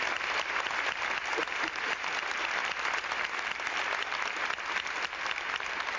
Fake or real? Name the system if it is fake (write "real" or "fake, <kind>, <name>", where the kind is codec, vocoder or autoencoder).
real